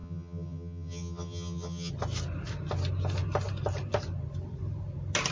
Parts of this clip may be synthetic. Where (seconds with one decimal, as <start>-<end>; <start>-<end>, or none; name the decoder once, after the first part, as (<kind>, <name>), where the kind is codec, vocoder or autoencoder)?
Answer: 0.0-1.9 (vocoder, HiFi-GAN)